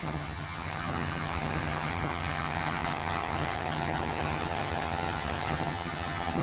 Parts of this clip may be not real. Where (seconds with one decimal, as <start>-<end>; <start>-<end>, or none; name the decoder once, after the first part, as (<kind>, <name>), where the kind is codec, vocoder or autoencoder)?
0.0-6.4 (vocoder, HiFi-GAN)